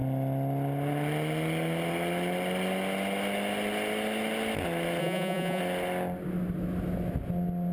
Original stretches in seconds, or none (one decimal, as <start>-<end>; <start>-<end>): 0.0-5.0; 5.6-7.7